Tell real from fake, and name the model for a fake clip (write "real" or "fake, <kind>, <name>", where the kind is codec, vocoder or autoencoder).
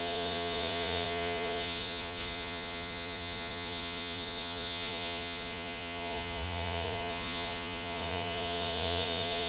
fake, vocoder, Vocos